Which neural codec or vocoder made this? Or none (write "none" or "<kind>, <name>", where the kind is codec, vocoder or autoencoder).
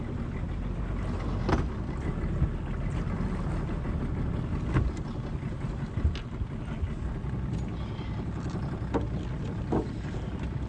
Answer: none